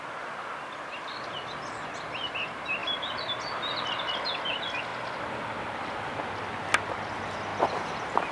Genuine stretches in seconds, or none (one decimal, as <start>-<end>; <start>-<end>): 0.0-4.9; 6.1-8.3